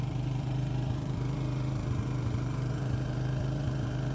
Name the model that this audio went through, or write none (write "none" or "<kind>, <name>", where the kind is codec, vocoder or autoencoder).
vocoder, BigVGAN v2